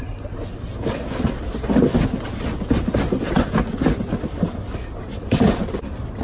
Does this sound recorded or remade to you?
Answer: recorded